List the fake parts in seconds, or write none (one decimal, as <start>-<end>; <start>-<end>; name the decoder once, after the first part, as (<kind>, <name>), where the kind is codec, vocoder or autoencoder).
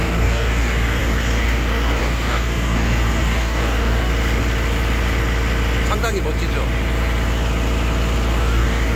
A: 0.0-4.1 (codec, DAC); 8.3-9.0